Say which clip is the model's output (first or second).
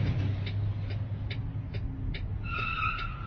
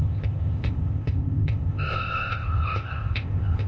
second